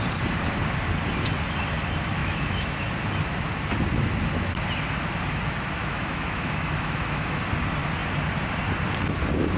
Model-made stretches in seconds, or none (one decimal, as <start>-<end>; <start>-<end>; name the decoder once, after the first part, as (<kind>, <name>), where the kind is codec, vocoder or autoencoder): 2.2-2.9 (autoencoder, DAC-VAE); 5.8-7.4

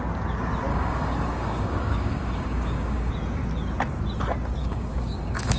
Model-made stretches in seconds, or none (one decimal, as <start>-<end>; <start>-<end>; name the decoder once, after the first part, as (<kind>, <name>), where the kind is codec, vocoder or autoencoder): 0.7-3.1 (codec, DAC); 4.6-5.6

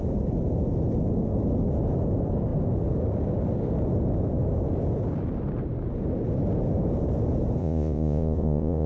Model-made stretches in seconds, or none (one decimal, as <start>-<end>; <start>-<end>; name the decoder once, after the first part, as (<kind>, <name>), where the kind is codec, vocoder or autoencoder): 7.6-8.9 (vocoder, Vocos)

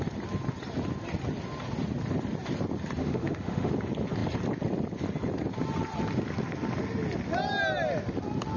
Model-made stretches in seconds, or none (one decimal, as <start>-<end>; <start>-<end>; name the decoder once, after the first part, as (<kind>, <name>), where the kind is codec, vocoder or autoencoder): 3.0-3.7 (autoencoder, DAC-VAE)

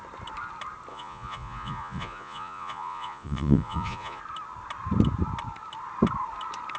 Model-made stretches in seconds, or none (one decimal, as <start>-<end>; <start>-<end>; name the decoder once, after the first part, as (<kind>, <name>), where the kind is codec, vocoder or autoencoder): 0.9-4.2 (vocoder, Vocos)

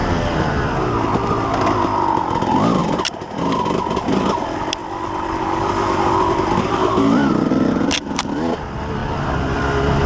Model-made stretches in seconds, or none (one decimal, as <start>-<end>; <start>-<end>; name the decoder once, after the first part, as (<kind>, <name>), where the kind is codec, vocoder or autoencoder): 2.8-3.4 (vocoder, BigVGAN v2); 4.8-8.3; 9.0-10.1

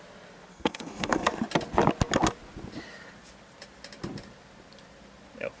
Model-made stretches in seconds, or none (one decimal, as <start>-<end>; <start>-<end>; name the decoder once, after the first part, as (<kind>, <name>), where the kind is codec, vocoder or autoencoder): 0.5-1.3 (codec, SNAC)

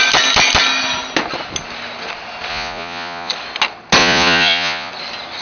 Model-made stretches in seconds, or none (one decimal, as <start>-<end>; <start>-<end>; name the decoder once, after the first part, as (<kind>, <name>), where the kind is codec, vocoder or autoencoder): 2.5-3.3 (vocoder, Vocos); 4.0-4.9